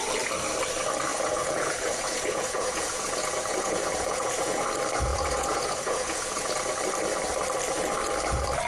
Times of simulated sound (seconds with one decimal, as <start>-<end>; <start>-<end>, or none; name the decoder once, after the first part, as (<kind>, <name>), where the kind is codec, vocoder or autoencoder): 1.1-4.6 (vocoder, Vocos); 5.1-6.8